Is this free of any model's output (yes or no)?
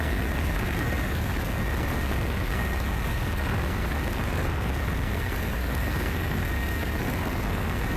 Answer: no